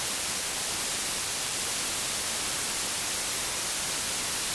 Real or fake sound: real